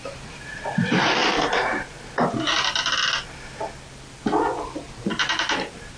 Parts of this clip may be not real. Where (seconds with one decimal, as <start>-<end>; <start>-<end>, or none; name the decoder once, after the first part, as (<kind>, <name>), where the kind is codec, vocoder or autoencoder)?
0.0-1.0 (vocoder, BigVGAN v2); 4.6-6.0

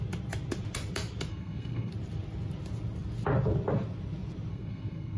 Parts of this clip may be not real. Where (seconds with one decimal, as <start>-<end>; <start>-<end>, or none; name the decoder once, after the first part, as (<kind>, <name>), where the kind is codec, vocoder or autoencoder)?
1.3-1.9 (codec, SNAC); 4.5-5.2

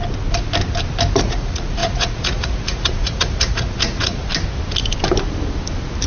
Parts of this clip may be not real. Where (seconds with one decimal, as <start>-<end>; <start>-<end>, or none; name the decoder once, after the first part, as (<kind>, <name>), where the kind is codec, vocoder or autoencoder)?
1.2-4.3 (vocoder, Vocos)

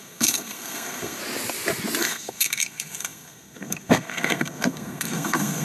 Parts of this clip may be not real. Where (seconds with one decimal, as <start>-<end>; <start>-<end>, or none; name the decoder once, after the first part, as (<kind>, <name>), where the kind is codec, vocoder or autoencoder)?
0.0-1.2 (codec, SNAC); 2.0-5.6

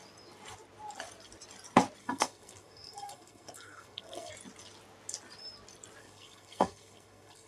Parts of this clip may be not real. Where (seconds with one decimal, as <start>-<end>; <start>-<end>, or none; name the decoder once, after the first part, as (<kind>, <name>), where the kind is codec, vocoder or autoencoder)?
2.0-4.3 (codec, SNAC); 6.0-7.5